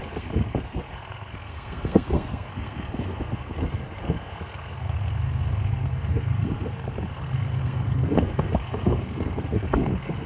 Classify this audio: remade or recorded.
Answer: remade